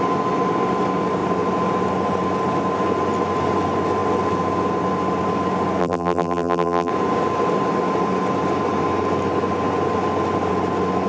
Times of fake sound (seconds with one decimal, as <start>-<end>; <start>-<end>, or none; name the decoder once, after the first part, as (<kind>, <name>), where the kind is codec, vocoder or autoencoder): 5.8-6.9 (vocoder, BigVGAN v2)